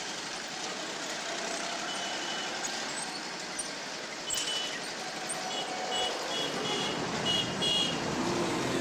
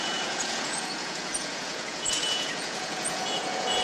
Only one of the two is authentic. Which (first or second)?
first